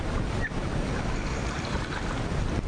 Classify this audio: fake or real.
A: real